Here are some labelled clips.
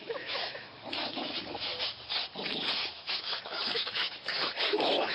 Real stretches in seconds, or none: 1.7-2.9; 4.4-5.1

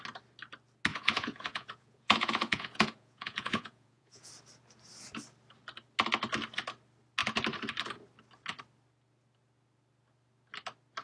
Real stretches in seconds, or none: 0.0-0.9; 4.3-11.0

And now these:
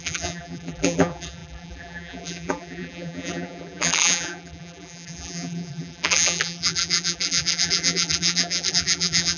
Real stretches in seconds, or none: none

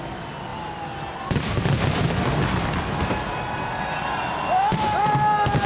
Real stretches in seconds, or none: 0.0-5.7

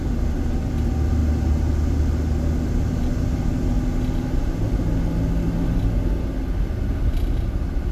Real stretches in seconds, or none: 0.0-7.9